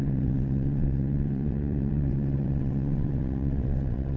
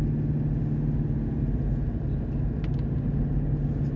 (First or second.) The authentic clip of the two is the second